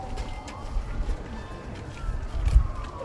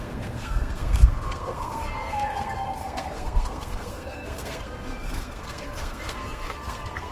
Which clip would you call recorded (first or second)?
first